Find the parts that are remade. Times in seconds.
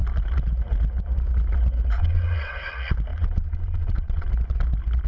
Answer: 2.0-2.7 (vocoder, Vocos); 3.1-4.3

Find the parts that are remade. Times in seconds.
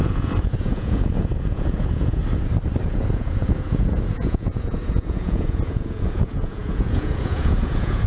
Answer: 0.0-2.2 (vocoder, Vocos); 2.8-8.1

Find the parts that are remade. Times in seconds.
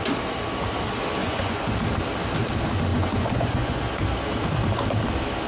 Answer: 1.2-1.7 (vocoder, Vocos); 2.9-3.8